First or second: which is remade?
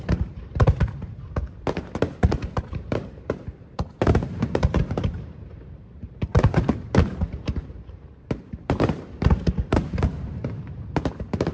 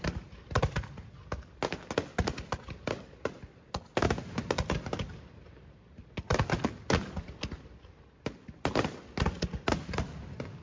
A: first